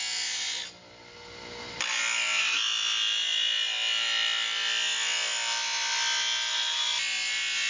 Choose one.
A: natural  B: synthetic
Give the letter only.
A